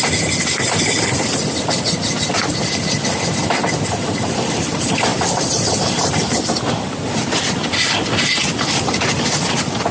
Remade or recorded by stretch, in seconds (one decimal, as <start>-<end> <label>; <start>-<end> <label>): 0.0-9.9 recorded